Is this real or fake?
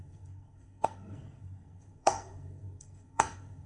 fake